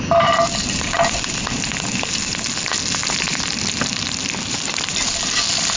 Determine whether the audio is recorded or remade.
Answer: recorded